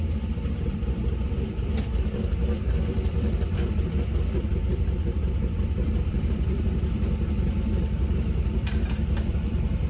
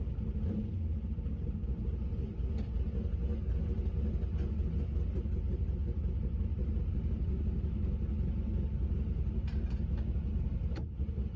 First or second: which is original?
second